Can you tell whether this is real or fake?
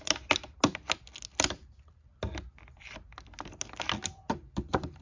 real